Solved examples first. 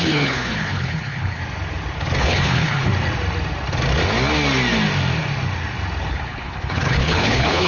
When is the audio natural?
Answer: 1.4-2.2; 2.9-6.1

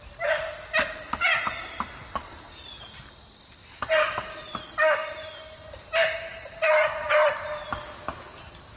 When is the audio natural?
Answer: 0.0-8.8

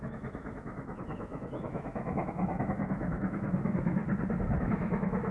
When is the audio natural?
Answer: 4.0-4.6

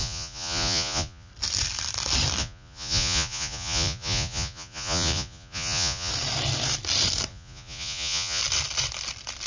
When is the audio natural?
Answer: 1.3-2.4; 6.1-7.3; 8.4-9.5

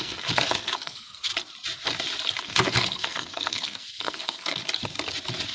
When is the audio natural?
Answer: 1.3-2.4; 4.6-5.5

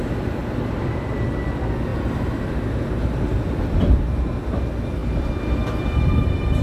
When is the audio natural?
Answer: 0.0-6.6